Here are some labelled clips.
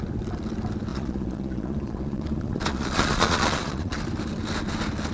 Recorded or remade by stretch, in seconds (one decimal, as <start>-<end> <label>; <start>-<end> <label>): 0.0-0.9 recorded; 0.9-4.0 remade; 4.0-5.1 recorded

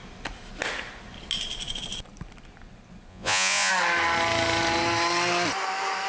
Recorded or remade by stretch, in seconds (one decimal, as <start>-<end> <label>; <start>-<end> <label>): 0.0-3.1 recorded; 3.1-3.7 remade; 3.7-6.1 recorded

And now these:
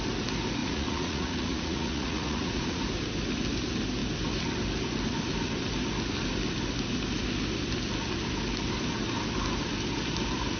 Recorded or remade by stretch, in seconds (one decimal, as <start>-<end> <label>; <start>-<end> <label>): 0.0-0.6 recorded; 0.6-2.8 remade; 2.8-10.6 recorded